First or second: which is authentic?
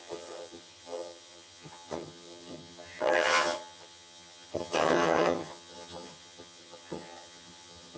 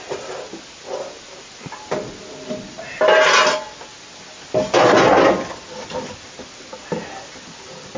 second